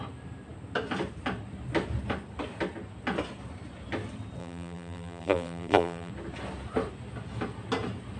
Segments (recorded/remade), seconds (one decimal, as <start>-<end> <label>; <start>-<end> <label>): 0.0-4.4 recorded; 4.4-6.1 remade; 6.1-8.2 recorded